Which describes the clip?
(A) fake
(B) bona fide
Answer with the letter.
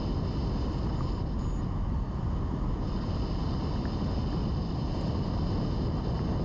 B